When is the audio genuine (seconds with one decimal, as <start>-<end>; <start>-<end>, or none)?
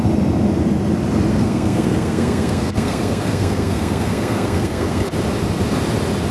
0.0-1.3; 5.1-6.3